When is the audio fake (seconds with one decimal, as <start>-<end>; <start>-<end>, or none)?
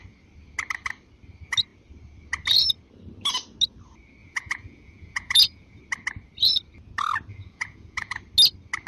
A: 4.2-5.8; 7.3-8.2